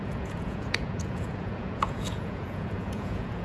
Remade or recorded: remade